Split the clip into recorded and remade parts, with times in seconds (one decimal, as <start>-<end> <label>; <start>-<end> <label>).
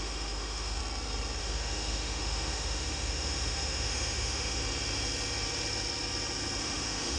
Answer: 0.0-0.8 remade; 0.8-1.4 recorded; 1.4-4.6 remade; 4.6-6.6 recorded; 6.6-7.2 remade